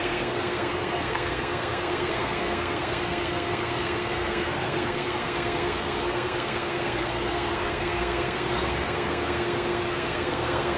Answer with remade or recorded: remade